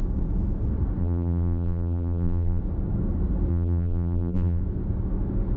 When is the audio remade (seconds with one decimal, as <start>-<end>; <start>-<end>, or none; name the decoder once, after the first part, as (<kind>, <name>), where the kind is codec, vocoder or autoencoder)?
1.0-2.6 (vocoder, BigVGAN v2); 3.5-4.6